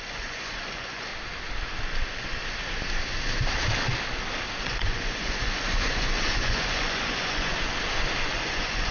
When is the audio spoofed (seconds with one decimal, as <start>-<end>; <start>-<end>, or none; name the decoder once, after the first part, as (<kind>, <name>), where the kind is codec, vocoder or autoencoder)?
0.0-1.1 (vocoder, Vocos); 4.6-7.5; 8.3-8.9